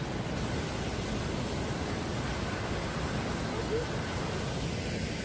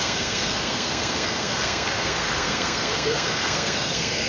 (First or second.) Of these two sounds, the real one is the first